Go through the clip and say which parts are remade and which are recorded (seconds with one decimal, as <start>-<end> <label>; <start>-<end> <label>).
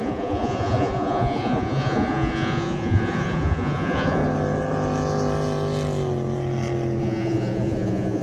0.0-4.2 remade; 4.2-7.0 recorded; 7.0-8.2 remade